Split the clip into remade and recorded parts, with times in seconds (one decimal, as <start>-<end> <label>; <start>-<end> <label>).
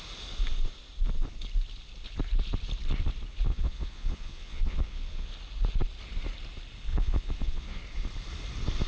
0.0-3.5 recorded; 3.5-5.3 remade; 5.3-6.9 recorded; 6.9-7.8 remade; 7.8-8.9 recorded